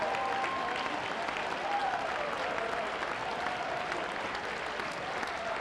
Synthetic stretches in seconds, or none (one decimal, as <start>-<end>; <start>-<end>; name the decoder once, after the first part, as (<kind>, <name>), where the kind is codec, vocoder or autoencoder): none